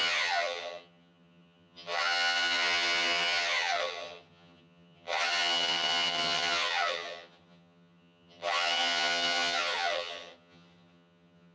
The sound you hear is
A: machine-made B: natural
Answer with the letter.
A